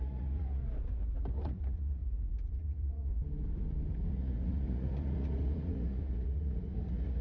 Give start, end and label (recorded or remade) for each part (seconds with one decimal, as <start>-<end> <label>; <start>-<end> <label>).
0.0-0.6 remade; 0.6-1.3 recorded; 1.3-2.0 remade; 2.0-2.6 recorded; 2.6-3.1 remade; 3.1-4.1 recorded; 4.1-7.2 remade

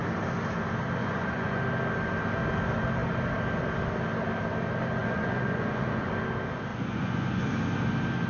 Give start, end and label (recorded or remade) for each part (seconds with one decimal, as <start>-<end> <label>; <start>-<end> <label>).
0.0-1.0 recorded; 1.0-1.6 remade; 1.6-5.0 recorded; 5.0-6.1 remade; 6.1-6.7 recorded; 6.7-7.5 remade; 7.5-8.3 recorded

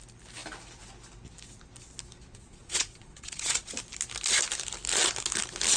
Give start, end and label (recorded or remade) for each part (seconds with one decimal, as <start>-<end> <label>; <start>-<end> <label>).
0.0-2.3 recorded; 2.3-3.7 remade; 3.7-5.8 recorded